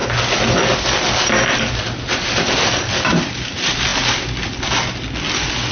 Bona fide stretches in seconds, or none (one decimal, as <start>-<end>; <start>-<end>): 0.0-5.7